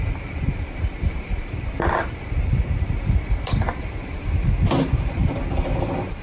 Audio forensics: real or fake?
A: fake